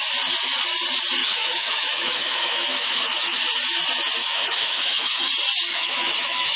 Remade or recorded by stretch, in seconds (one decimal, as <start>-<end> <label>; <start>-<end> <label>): 0.0-1.2 recorded; 1.2-3.4 remade; 3.4-4.2 recorded; 4.2-5.3 remade; 5.3-5.7 recorded; 5.7-6.6 remade